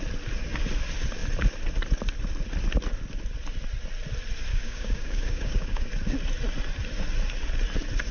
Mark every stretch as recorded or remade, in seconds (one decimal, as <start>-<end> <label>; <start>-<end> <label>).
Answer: 0.0-4.5 recorded; 4.5-5.9 remade; 5.9-8.1 recorded